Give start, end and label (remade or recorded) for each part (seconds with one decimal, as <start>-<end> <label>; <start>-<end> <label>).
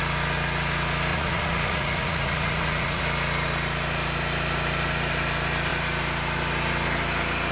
0.0-1.1 recorded; 1.1-3.0 remade; 3.0-7.5 recorded